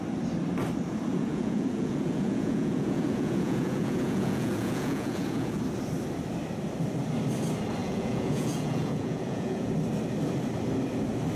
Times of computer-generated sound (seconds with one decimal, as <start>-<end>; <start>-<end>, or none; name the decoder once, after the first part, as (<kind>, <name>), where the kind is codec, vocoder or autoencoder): 1.1-5.6 (vocoder, Vocos); 7.8-9.7